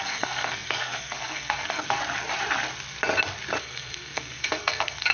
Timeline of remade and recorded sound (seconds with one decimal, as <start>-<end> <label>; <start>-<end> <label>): 0.0-2.0 remade; 2.0-3.6 recorded; 3.6-5.1 remade